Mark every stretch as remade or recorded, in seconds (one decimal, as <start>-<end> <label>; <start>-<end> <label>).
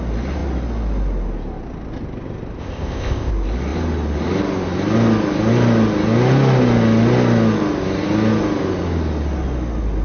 0.0-2.6 recorded; 2.6-3.3 remade; 3.3-10.0 recorded